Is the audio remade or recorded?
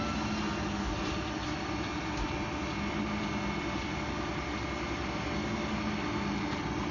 recorded